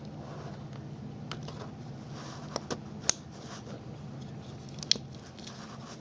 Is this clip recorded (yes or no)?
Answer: yes